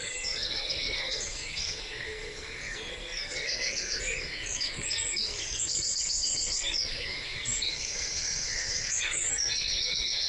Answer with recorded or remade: remade